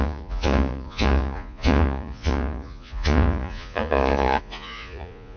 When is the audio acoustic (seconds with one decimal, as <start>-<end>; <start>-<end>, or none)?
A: none